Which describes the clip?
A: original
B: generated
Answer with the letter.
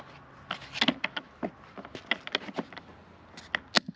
A